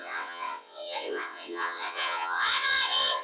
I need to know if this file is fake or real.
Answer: fake